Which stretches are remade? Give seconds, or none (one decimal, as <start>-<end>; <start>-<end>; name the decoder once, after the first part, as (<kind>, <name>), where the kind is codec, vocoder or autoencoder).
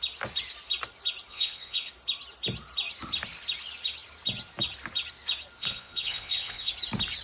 1.3-1.9 (vocoder, Vocos); 5.6-6.7